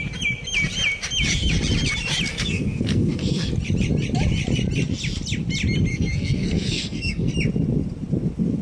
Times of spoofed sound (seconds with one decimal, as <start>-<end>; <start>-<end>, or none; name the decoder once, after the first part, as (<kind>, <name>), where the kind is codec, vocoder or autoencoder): 2.3-3.5 (codec, SNAC); 5.9-7.3